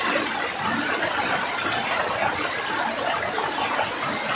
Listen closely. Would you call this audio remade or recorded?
recorded